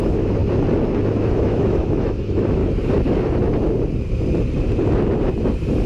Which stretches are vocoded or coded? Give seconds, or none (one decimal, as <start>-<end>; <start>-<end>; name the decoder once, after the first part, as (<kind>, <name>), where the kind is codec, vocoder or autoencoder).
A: 0.0-0.4 (autoencoder, DAC-VAE); 1.1-2.6